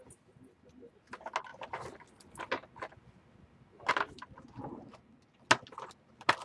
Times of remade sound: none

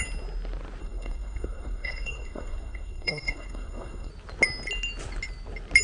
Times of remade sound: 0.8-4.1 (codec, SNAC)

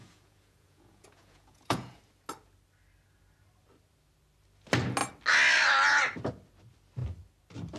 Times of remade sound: 0.0-2.0 (vocoder, Vocos)

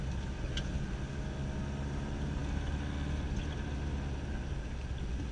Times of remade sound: none

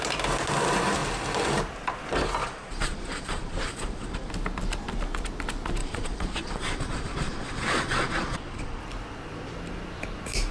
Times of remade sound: 2.4-4.3 (vocoder, Vocos); 5.8-8.8

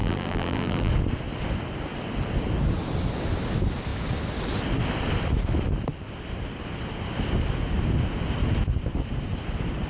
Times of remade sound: 0.0-0.9 (vocoder, BigVGAN v2)

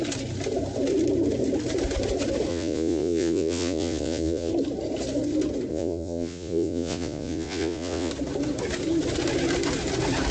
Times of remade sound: 2.5-4.5 (vocoder, Vocos); 5.7-8.1

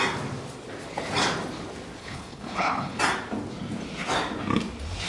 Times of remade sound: 2.0-3.0 (codec, HILCodec)